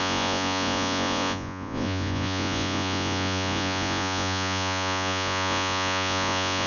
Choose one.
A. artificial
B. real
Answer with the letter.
A